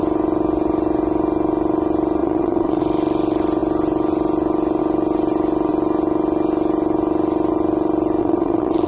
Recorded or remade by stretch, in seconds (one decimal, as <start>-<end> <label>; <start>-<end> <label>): 0.0-2.2 recorded; 2.2-2.8 remade; 2.8-8.2 recorded; 8.2-8.9 remade